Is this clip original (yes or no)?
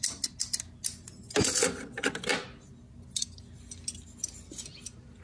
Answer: yes